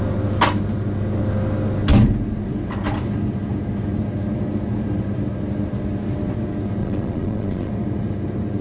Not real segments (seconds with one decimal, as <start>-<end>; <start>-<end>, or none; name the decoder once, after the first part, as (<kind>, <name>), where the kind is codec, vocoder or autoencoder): 6.8-7.7 (vocoder, Vocos)